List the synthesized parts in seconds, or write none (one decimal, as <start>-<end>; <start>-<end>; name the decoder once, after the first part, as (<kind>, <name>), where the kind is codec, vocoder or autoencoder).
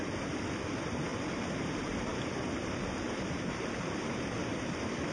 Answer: 1.1-1.7 (vocoder, BigVGAN v2); 2.1-4.2